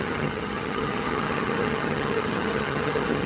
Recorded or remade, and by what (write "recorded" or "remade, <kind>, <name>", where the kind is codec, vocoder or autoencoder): remade, vocoder, HiFi-GAN